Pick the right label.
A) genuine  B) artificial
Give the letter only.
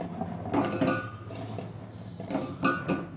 A